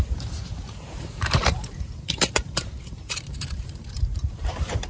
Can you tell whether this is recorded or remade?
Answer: remade